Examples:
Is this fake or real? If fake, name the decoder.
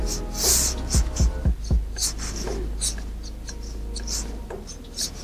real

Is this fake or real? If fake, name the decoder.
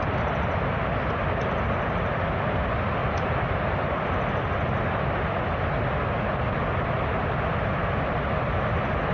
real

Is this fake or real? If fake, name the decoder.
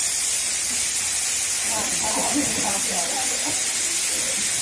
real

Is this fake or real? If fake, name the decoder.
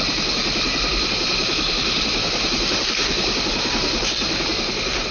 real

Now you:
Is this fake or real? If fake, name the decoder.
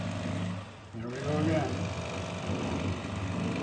real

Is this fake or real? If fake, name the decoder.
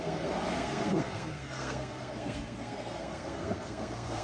fake, codec, SNAC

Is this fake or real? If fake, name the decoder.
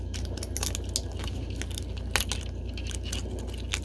real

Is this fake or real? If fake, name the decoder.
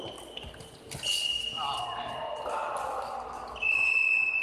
real